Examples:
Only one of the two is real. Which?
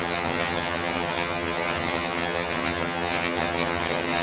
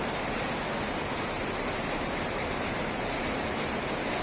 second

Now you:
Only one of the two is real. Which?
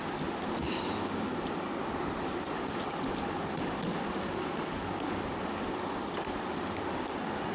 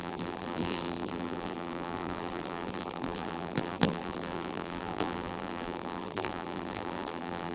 first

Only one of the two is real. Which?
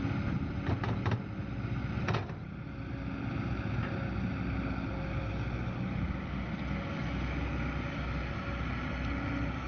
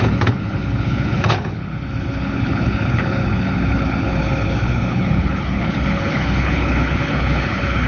first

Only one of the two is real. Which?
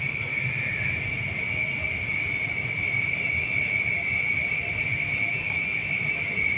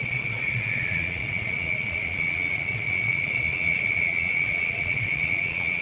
first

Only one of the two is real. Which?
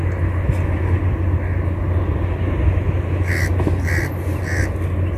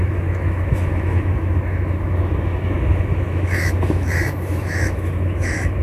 first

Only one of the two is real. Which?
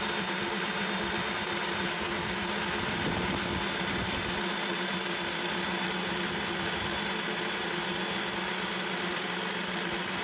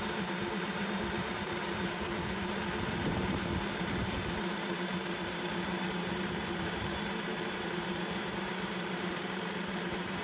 first